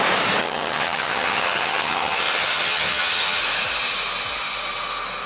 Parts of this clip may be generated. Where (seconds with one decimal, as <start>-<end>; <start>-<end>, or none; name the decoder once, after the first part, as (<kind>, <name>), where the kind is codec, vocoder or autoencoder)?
0.4-3.4 (vocoder, HiFi-GAN)